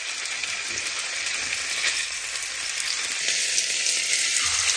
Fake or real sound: real